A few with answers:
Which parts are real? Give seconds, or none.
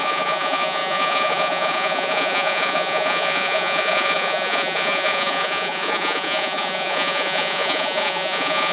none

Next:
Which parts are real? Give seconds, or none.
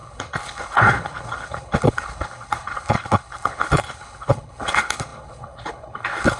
none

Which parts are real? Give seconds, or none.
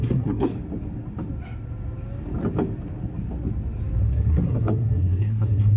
0.5-4.0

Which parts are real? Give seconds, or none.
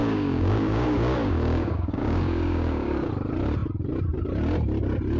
3.1-5.2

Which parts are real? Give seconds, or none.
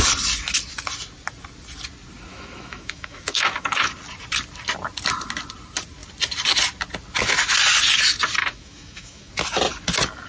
0.0-2.3; 3.9-8.4; 9.3-10.3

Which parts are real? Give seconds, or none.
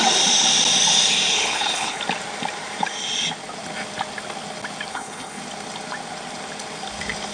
0.0-1.3; 2.0-4.9; 5.4-7.3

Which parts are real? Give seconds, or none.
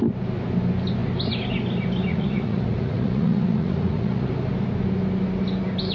0.0-2.1; 4.3-5.9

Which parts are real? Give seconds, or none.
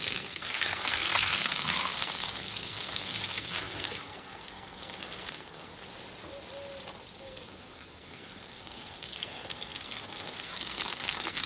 5.7-7.2